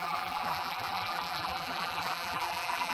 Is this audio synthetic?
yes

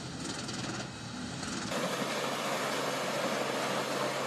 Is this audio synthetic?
no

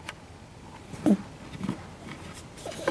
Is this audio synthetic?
no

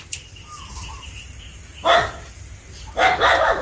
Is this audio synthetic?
no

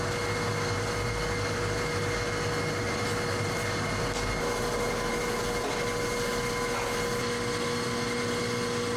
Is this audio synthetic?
no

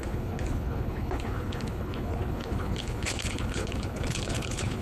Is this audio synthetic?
yes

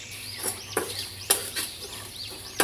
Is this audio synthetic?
yes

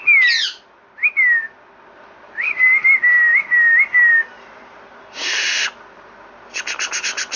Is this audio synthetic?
no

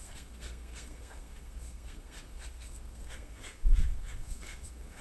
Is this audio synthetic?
yes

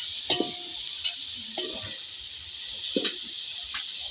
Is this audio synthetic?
no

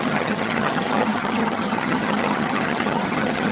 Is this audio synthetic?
yes